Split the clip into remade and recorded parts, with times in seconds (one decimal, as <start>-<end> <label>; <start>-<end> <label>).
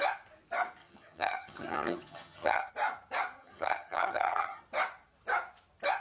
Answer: 0.0-0.8 recorded; 0.8-2.7 remade; 2.7-3.4 recorded; 3.4-4.6 remade; 4.6-6.0 recorded